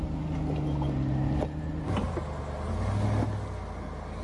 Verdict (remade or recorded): recorded